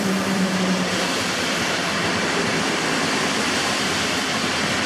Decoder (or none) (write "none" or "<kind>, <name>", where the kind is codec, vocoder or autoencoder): vocoder, BigVGAN v2